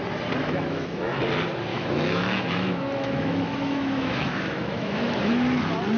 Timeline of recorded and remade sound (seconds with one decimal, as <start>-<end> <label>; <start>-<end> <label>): 0.0-0.4 recorded; 0.4-1.2 remade; 1.2-1.7 recorded; 1.7-5.3 remade; 5.3-6.0 recorded